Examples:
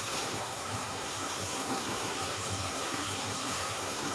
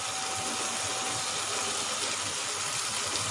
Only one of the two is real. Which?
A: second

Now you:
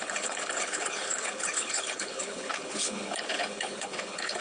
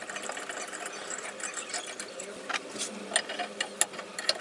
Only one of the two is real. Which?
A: second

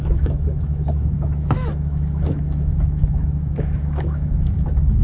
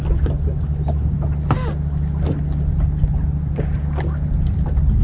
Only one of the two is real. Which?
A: second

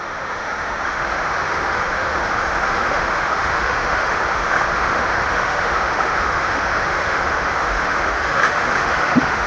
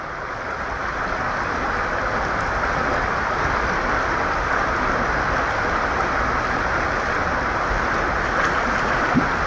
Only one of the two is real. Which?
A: second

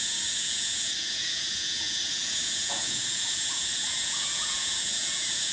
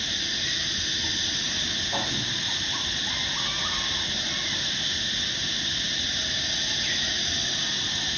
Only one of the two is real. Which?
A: second